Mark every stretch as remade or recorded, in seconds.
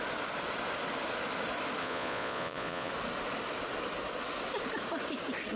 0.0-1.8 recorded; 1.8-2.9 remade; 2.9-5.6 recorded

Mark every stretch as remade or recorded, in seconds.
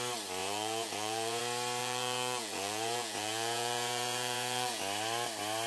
0.0-0.4 recorded; 0.4-1.4 remade; 1.4-1.8 recorded; 1.8-4.8 remade; 4.8-5.7 recorded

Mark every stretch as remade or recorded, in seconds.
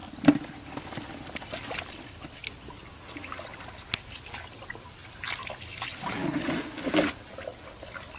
0.0-8.2 recorded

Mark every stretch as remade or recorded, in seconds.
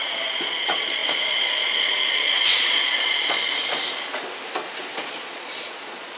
0.0-3.6 remade; 3.6-5.0 recorded; 5.0-6.2 remade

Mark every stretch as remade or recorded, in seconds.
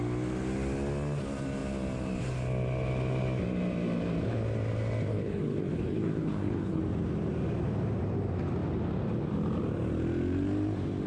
0.0-5.1 recorded; 5.1-6.8 remade; 6.8-11.1 recorded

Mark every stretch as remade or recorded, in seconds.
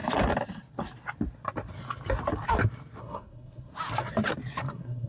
0.0-3.0 recorded; 3.0-3.7 remade; 3.7-4.6 recorded; 4.6-5.1 remade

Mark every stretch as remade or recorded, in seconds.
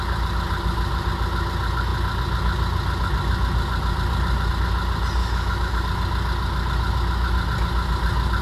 0.0-5.2 recorded; 5.2-5.8 remade; 5.8-8.4 recorded